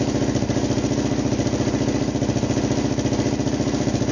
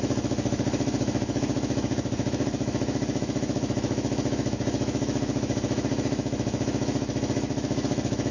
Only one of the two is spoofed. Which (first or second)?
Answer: second